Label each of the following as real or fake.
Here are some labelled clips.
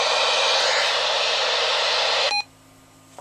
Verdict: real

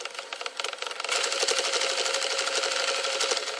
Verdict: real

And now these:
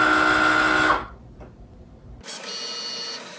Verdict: real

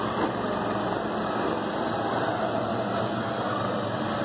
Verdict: real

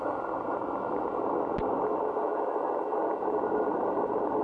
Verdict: real